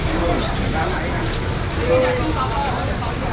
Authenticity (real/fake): real